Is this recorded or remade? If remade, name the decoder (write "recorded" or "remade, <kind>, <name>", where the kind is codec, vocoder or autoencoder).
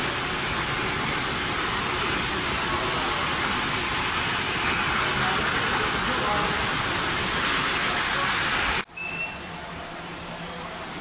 recorded